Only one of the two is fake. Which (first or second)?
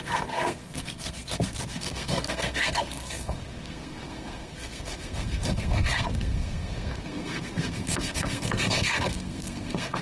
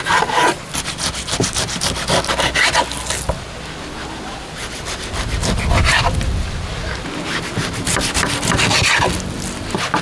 first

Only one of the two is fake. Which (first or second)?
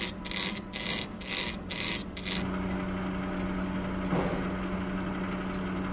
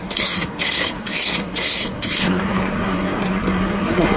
second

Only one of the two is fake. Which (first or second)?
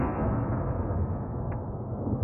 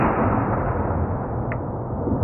first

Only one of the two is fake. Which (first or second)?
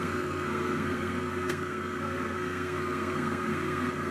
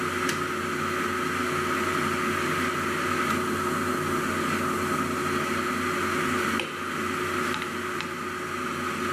first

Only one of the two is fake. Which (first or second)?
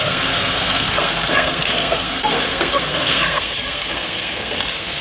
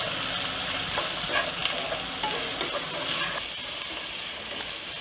first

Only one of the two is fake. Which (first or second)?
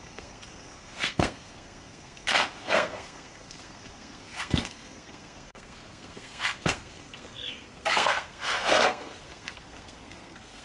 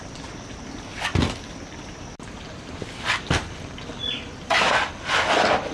first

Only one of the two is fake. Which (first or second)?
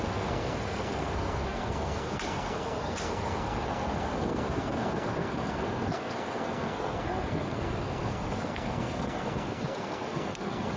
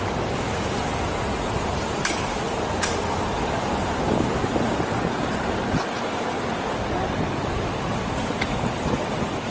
first